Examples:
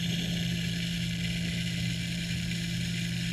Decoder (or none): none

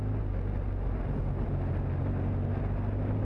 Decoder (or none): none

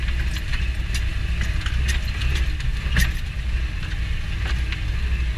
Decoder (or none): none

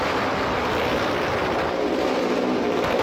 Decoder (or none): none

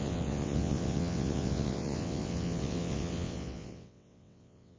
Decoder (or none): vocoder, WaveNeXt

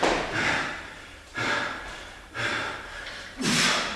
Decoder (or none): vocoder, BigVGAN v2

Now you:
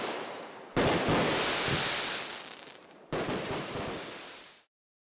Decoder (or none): vocoder, BigVGAN v2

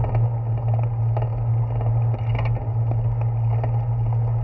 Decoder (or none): none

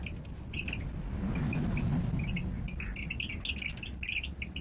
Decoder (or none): none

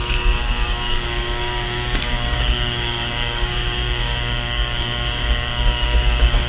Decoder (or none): codec, DAC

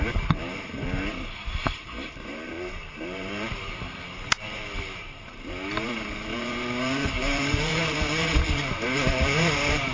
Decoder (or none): vocoder, BigVGAN v2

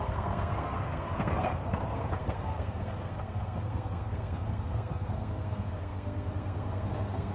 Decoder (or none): codec, SNAC